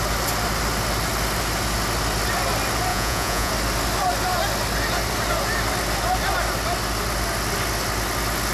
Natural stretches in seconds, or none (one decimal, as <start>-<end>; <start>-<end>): 0.0-2.9; 3.5-8.5